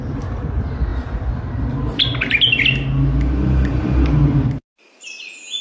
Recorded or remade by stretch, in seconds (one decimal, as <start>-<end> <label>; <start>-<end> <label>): 0.0-5.6 recorded